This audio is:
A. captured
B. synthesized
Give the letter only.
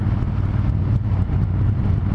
A